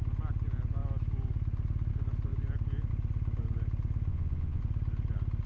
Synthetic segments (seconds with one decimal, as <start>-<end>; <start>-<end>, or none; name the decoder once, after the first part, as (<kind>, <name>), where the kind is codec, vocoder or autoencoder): 4.1-4.6 (vocoder, Vocos)